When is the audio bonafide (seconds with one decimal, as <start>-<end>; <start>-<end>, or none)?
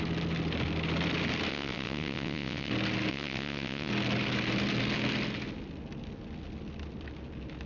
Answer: 0.0-1.5; 2.7-3.1; 3.9-7.7